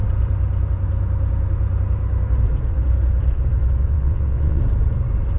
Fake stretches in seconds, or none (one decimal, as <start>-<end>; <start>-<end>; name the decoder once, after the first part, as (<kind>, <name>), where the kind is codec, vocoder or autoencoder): 3.8-4.6 (vocoder, WaveNeXt)